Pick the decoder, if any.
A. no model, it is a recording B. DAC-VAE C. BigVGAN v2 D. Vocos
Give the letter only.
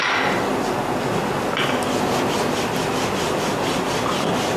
A